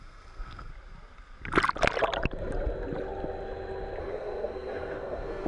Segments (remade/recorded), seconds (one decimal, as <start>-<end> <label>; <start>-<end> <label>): 0.0-0.7 remade; 0.7-4.0 recorded; 4.0-5.5 remade